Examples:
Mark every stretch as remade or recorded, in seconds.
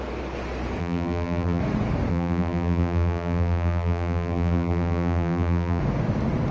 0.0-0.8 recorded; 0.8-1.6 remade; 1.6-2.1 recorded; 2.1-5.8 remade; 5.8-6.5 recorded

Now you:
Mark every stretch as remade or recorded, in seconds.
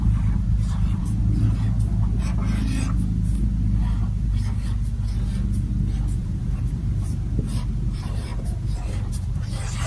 0.0-1.0 remade; 1.0-6.2 recorded; 6.2-9.9 remade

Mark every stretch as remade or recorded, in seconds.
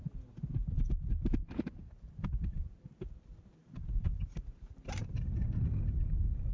0.0-1.4 recorded; 1.4-2.5 remade; 2.5-3.6 recorded; 3.6-4.4 remade; 4.4-6.5 recorded